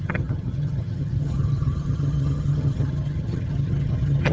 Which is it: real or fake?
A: fake